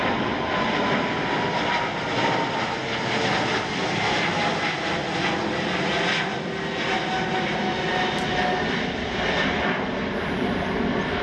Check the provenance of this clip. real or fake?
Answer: real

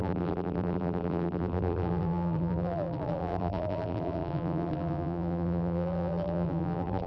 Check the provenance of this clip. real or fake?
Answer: fake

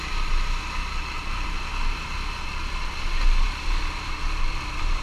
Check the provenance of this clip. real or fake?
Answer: real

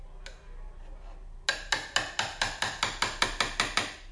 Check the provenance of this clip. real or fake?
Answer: real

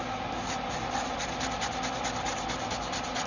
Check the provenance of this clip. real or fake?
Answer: real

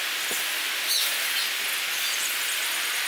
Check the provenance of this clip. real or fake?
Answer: real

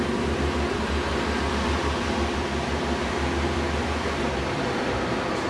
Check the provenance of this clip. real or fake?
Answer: fake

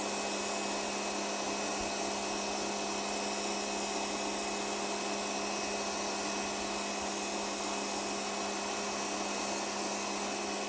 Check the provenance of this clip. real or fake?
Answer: real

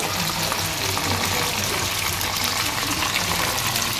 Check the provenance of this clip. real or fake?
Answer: real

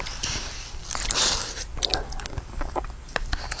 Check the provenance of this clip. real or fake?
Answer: fake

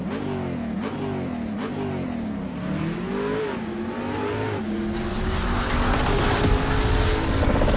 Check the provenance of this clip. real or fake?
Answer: real